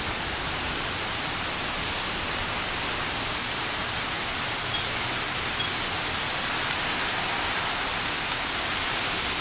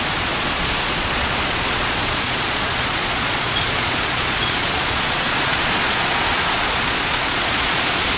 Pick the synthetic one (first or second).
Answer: second